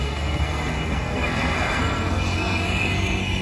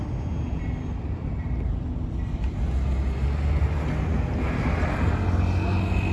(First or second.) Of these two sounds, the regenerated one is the first